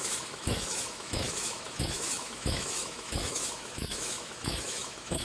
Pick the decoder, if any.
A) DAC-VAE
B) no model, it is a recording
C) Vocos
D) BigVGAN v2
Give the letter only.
A